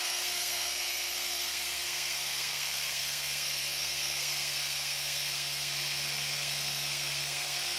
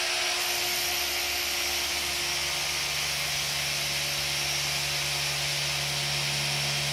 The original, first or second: second